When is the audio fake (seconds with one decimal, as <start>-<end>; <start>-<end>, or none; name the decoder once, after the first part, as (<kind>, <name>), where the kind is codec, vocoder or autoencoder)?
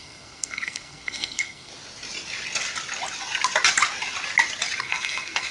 0.0-1.7 (codec, SNAC); 4.8-5.5